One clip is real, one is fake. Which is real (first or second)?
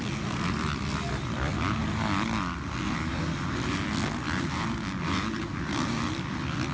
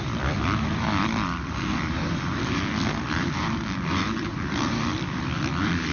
first